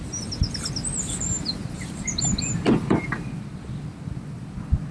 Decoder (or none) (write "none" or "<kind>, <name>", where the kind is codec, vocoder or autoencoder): none